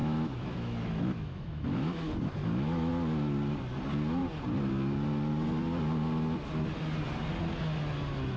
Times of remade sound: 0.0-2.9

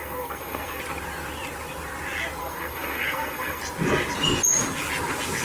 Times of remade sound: 0.0-0.8; 2.4-3.6

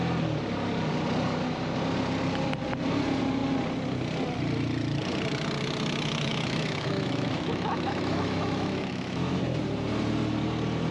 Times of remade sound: 6.3-9.4

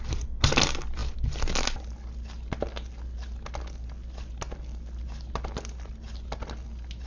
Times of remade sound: none